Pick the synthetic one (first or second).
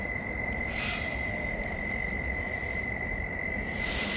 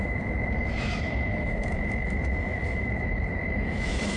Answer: second